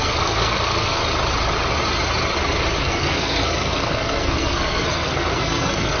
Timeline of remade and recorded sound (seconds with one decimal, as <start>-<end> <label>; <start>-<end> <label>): 0.0-1.0 remade; 1.0-2.8 recorded; 2.8-6.0 remade